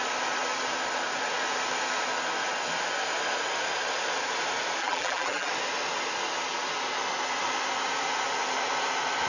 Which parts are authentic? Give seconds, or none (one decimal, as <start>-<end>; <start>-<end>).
0.0-4.8; 5.5-9.3